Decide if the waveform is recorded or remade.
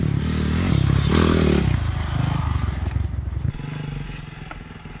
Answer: recorded